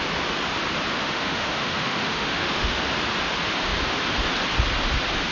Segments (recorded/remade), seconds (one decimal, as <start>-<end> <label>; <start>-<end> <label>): 0.0-0.9 recorded; 0.9-2.8 remade; 2.8-5.3 recorded